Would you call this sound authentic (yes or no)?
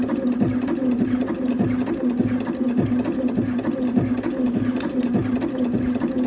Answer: yes